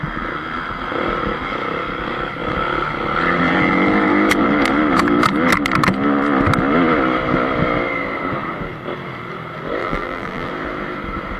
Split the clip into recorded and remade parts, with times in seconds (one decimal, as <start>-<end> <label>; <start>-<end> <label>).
0.0-9.8 recorded; 9.8-10.5 remade; 10.5-11.4 recorded